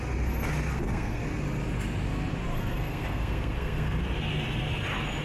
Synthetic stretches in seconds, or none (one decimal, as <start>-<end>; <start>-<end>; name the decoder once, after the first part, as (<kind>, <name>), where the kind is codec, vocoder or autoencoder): 0.7-1.2 (codec, SNAC); 2.5-4.0